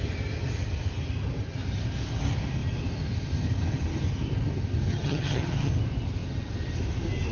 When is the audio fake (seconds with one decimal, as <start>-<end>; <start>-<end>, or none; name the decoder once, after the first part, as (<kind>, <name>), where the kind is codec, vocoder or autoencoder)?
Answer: 4.9-5.7 (vocoder, HiFi-GAN)